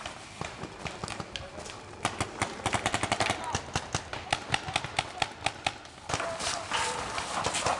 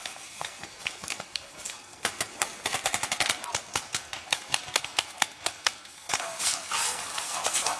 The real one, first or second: first